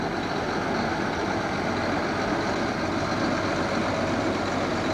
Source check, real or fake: real